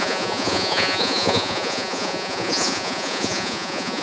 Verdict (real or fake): fake